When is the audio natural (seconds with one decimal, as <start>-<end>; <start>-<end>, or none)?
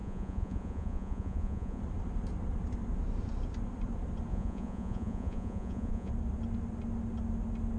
1.8-4.3; 6.1-7.8